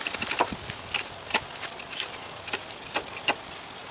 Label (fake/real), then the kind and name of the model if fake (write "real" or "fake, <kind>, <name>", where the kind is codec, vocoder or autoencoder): real